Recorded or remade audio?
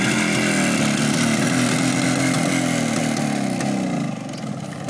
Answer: recorded